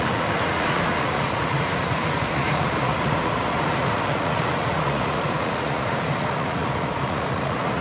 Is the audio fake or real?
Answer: fake